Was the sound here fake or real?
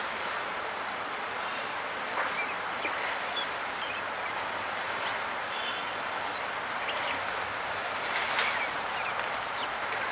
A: real